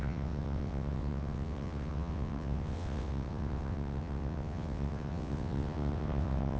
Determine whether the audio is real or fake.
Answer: fake